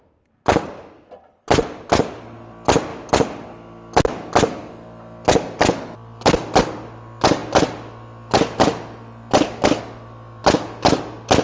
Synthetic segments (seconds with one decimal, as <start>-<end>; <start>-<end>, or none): none